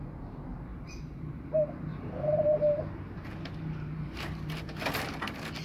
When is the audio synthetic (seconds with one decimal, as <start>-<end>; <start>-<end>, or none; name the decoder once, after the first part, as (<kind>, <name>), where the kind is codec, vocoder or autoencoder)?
0.7-1.5 (vocoder, BigVGAN v2); 1.9-5.0